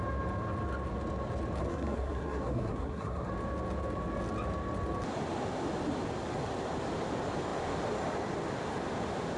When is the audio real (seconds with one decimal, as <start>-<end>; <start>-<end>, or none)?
0.0-1.6; 3.3-9.4